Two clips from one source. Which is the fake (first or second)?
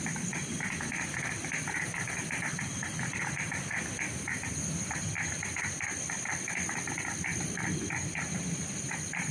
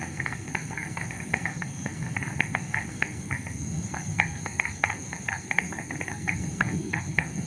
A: second